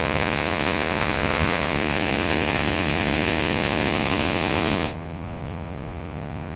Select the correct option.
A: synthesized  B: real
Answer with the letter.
A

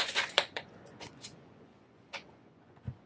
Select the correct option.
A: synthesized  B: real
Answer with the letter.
A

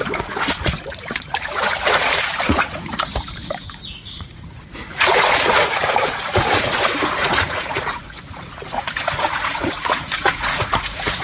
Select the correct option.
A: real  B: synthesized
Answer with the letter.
B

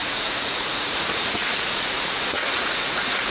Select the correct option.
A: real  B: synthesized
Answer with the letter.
B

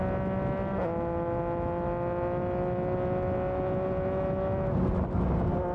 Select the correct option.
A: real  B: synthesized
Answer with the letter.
A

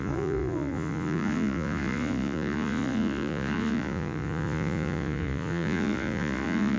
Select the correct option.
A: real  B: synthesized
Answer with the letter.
B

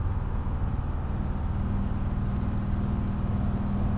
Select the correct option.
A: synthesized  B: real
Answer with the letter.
B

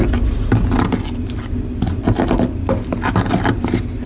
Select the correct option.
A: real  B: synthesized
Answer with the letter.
A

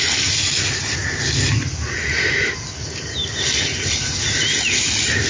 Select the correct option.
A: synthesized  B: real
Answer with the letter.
B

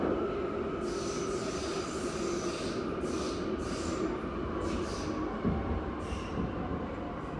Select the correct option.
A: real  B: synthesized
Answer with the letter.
A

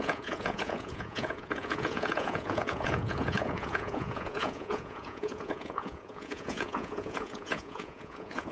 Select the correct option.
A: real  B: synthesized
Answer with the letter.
B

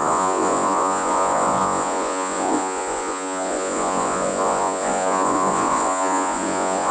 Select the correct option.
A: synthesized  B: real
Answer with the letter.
A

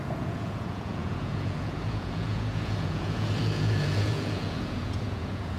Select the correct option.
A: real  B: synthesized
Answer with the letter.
B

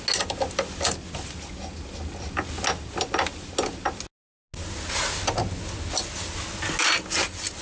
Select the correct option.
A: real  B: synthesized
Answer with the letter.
A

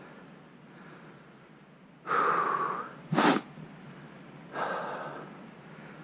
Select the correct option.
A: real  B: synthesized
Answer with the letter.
A